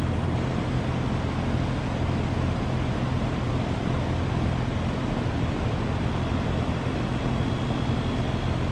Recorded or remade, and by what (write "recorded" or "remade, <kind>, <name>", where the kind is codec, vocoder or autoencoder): recorded